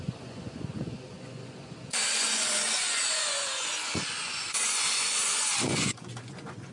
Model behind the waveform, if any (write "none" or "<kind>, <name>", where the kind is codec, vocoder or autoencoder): vocoder, Vocos